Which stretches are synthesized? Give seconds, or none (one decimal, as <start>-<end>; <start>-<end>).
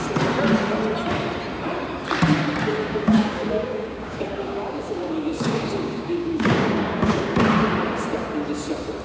2.8-7.4